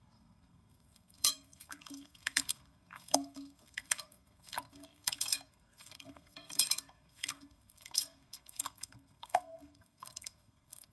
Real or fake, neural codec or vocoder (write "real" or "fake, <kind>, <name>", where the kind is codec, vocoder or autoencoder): fake, codec, SNAC